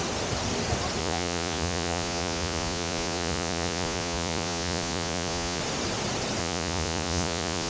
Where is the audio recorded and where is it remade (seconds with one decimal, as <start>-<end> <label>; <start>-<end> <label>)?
0.0-1.0 recorded; 1.0-5.6 remade; 5.6-6.4 recorded; 6.4-7.7 remade